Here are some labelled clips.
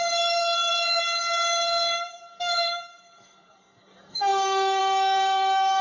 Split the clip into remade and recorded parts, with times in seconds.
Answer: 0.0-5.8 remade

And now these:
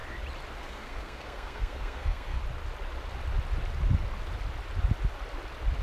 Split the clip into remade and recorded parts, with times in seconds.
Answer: 0.0-0.6 recorded; 0.6-2.4 remade; 2.4-5.8 recorded

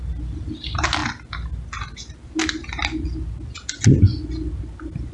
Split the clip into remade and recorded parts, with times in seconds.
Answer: 0.0-5.1 recorded